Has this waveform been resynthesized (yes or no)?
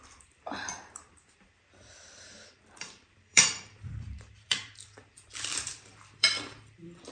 yes